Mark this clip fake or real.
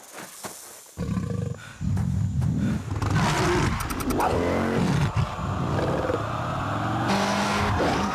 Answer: real